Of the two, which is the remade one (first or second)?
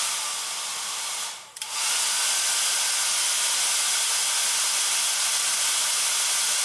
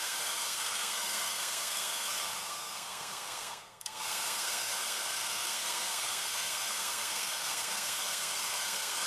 second